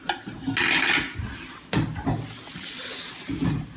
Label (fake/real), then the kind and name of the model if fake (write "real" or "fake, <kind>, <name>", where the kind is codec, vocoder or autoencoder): real